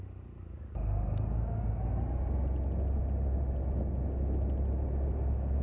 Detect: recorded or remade recorded